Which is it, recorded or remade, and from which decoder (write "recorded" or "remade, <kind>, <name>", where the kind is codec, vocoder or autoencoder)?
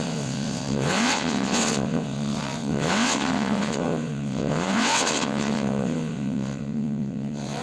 remade, vocoder, WaveNeXt